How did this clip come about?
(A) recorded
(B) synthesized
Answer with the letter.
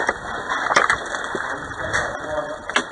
A